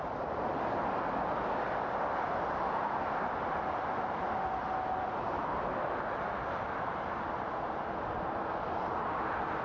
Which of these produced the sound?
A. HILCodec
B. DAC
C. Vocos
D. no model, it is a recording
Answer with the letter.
D